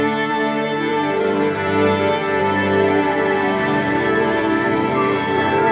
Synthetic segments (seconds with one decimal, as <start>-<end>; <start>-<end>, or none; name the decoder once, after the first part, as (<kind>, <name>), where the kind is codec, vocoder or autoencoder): 0.0-5.7 (vocoder, BigVGAN v2)